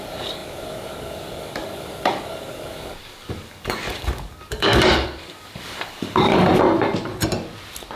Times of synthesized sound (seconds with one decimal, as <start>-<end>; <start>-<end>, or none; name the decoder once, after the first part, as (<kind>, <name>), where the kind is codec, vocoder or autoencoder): 0.0-6.3 (codec, DAC)